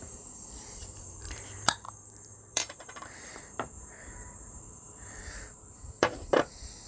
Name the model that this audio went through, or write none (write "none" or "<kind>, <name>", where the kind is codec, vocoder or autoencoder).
vocoder, BigVGAN v2